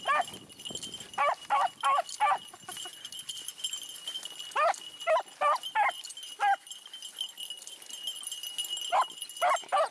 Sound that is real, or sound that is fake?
real